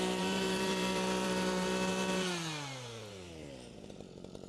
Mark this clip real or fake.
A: fake